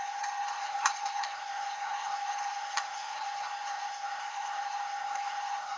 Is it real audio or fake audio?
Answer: fake